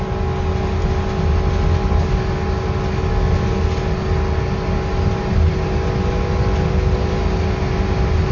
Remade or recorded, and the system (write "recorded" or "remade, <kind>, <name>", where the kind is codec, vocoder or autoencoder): recorded